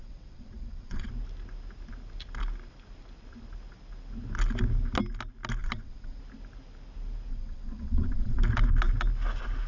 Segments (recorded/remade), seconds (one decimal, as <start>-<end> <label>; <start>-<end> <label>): 0.0-1.1 remade; 1.1-5.6 recorded; 5.6-6.2 remade; 6.2-7.3 recorded; 7.3-8.4 remade; 8.4-9.7 recorded